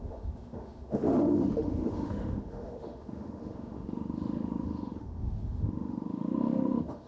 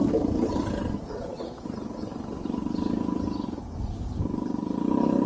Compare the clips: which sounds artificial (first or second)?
first